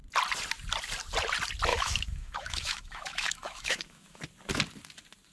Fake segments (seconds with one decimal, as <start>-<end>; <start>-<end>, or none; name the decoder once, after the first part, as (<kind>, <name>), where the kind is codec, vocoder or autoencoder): 1.7-4.2 (autoencoder, DAC-VAE)